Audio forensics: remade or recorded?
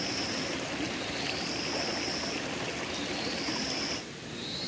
recorded